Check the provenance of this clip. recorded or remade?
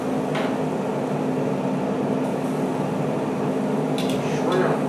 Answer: recorded